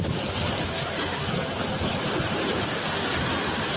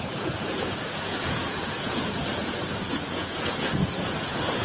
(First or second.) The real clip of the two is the first